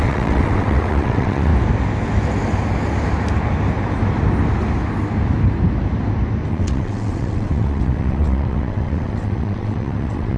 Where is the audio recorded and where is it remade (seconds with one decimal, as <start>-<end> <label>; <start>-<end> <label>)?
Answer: 0.0-1.5 remade; 1.5-6.5 recorded; 6.5-10.4 remade